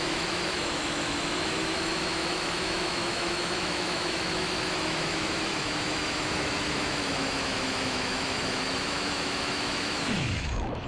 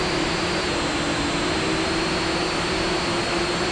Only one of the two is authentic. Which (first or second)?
second